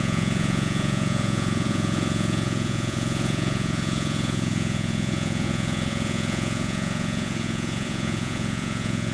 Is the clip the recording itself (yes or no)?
no